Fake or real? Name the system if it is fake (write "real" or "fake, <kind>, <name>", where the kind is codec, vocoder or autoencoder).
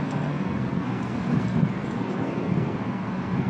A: fake, codec, SNAC